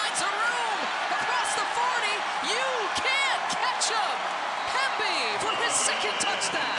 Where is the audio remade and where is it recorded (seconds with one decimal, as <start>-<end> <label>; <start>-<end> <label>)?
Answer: 0.0-6.8 recorded